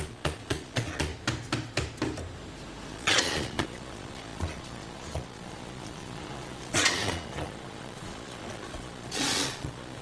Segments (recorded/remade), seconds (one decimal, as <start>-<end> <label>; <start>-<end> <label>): 0.0-1.1 remade; 1.1-2.9 recorded; 2.9-10.0 remade